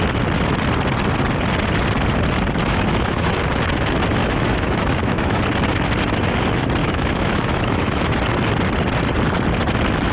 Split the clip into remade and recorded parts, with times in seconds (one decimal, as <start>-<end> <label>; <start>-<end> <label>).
0.0-2.6 recorded; 2.6-3.3 remade; 3.3-4.2 recorded; 4.2-5.4 remade; 5.4-6.8 recorded; 6.8-8.1 remade; 8.1-10.1 recorded